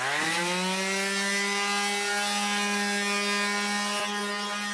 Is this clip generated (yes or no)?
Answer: no